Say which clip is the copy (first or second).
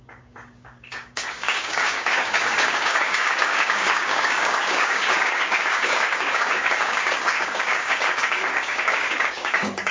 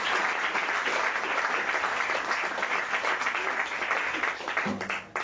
first